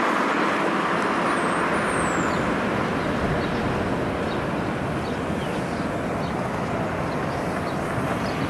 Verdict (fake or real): real